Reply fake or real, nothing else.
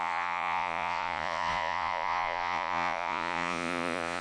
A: fake